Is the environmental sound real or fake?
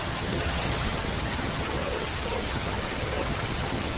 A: fake